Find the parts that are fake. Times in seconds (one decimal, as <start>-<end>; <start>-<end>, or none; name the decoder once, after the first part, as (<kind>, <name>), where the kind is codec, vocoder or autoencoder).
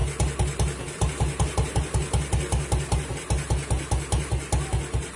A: none